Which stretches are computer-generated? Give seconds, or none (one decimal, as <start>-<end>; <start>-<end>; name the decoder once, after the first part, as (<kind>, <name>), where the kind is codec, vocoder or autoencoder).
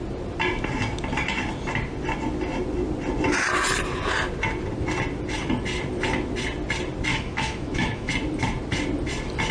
7.1-8.1 (autoencoder, DAC-VAE)